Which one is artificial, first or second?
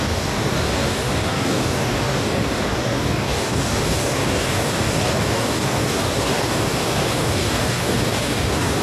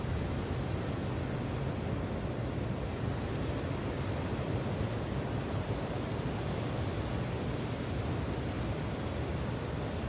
first